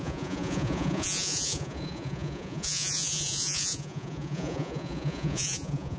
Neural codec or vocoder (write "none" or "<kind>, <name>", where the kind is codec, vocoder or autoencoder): vocoder, Vocos